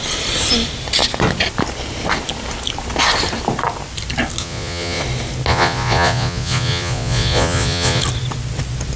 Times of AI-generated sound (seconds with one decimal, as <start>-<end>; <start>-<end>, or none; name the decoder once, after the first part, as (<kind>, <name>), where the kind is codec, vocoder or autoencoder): 4.4-5.0 (vocoder, Vocos); 5.5-8.0

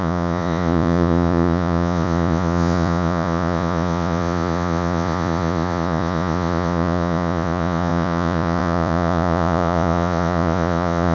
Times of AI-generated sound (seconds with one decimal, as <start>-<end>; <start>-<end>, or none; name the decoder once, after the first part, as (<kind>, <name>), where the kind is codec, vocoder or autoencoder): 0.0-11.1 (vocoder, Vocos)

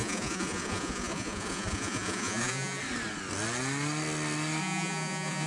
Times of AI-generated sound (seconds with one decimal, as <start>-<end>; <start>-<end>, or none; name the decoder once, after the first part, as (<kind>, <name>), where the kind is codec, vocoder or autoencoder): 0.0-2.8 (vocoder, Vocos); 4.6-5.5